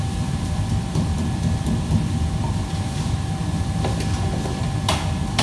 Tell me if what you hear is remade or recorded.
remade